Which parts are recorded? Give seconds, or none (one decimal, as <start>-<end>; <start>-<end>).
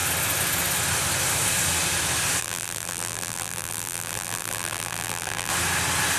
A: 0.0-2.4; 5.5-6.2